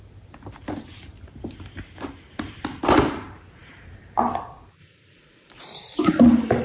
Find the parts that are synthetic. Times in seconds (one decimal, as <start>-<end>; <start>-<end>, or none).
3.6-4.2; 4.8-6.0